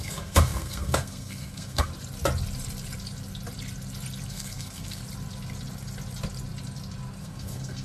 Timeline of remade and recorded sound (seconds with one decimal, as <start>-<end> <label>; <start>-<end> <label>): 0.0-1.9 remade; 1.9-4.3 recorded; 4.3-5.0 remade; 5.0-7.2 recorded; 7.2-7.8 remade